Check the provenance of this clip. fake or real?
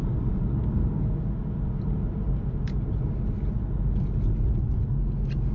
real